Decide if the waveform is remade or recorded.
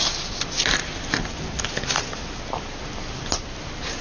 recorded